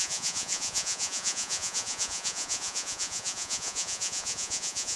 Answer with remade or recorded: remade